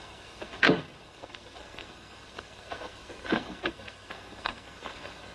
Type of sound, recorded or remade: remade